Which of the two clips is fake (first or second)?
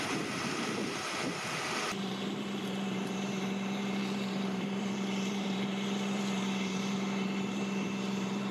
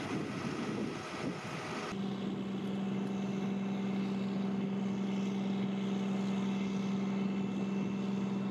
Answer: first